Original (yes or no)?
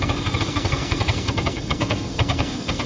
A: no